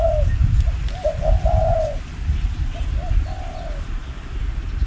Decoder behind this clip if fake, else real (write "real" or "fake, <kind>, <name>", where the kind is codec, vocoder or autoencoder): real